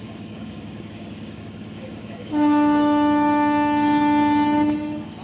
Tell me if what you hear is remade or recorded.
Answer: remade